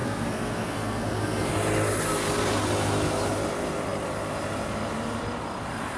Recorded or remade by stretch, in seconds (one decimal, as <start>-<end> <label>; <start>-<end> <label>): 0.0-1.5 remade; 1.5-6.0 recorded